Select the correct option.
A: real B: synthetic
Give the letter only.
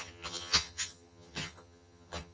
B